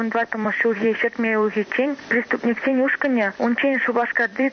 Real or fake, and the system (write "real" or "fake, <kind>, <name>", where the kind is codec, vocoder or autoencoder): fake, vocoder, BigVGAN v2